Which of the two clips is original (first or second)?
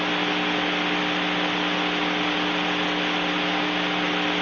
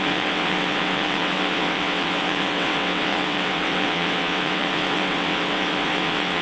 first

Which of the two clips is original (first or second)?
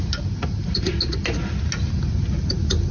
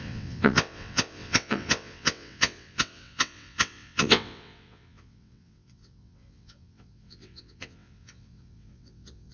first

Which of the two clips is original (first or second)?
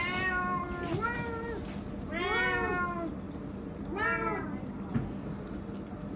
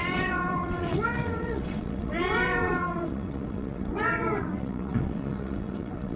first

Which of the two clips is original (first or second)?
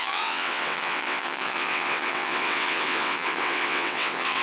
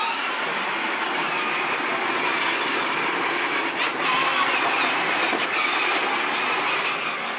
second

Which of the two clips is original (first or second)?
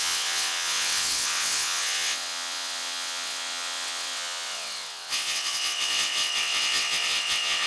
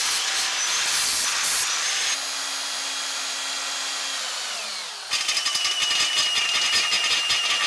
second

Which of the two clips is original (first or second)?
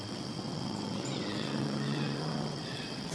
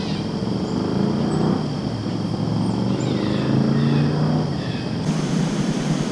second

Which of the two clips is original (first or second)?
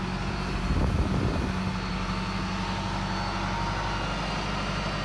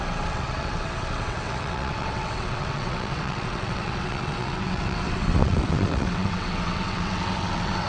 first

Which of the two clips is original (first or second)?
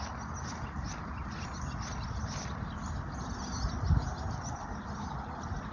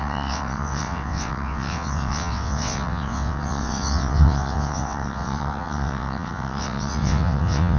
first